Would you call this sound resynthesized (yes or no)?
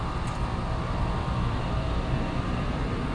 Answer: no